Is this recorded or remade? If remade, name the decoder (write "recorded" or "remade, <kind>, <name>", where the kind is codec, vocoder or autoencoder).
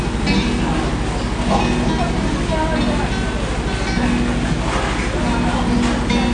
recorded